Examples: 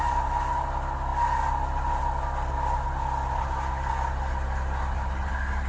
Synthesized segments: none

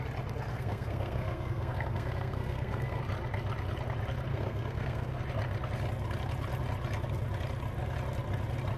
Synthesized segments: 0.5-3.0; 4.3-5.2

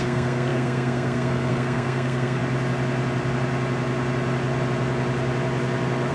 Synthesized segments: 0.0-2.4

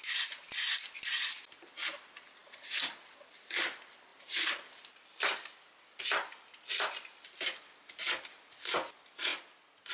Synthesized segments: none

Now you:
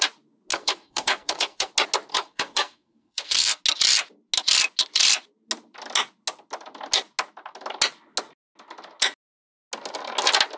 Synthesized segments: 0.5-1.7; 2.1-3.6

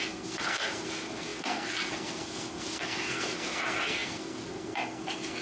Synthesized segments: 0.0-5.4